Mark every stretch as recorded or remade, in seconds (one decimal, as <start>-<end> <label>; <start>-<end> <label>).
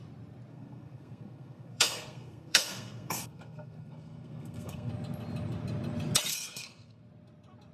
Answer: 0.0-0.5 recorded; 0.5-4.9 remade; 4.9-6.3 recorded; 6.3-7.0 remade; 7.0-7.7 recorded